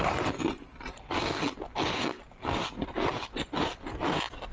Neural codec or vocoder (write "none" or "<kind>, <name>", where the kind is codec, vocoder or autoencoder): none